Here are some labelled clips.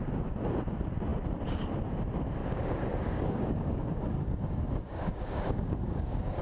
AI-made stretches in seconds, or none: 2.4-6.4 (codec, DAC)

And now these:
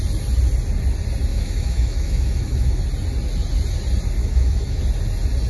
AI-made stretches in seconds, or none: 1.3-2.8 (autoencoder, DAC-VAE); 4.2-4.8